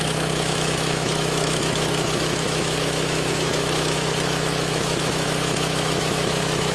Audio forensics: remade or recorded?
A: remade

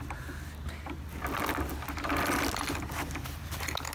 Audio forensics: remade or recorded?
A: recorded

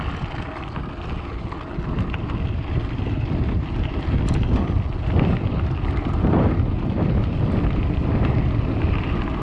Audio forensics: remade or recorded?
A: recorded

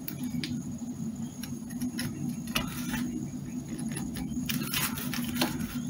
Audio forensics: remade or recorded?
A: recorded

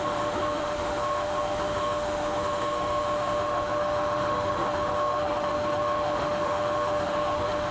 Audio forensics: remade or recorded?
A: remade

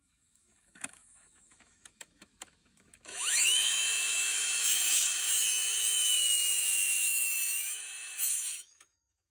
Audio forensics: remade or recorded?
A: remade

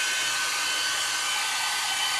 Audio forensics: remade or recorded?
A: recorded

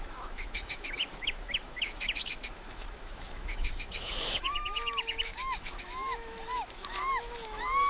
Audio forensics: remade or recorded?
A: remade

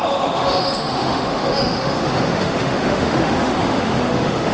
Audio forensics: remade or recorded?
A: remade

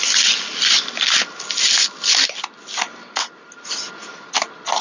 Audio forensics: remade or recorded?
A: recorded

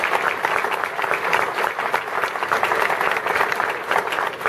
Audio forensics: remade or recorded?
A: recorded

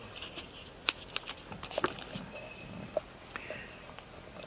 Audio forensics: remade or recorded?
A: recorded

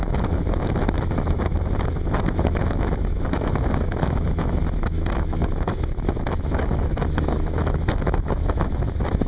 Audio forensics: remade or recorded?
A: remade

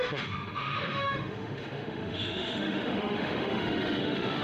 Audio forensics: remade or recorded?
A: remade